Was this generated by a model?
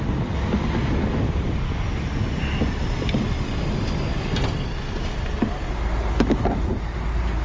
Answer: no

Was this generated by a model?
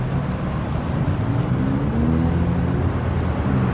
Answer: no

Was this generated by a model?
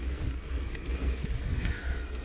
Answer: yes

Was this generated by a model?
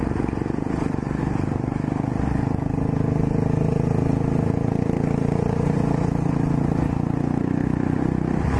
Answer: no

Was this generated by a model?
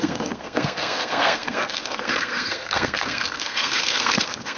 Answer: yes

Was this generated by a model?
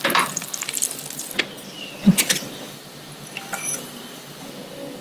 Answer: no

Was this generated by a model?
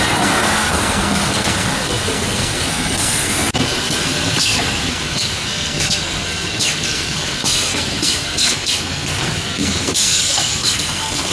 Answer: yes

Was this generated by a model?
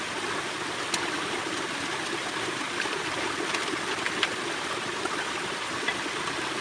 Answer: no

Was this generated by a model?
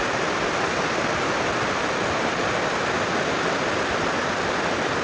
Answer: no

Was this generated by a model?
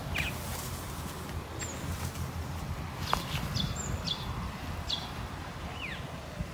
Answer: no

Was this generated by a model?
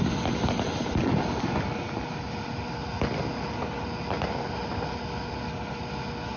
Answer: no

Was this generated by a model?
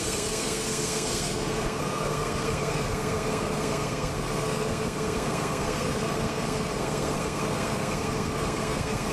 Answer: yes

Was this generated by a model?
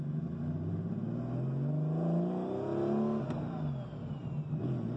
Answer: no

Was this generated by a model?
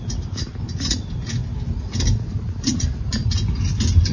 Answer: no